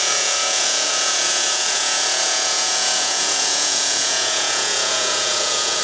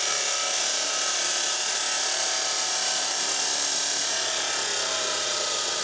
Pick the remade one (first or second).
first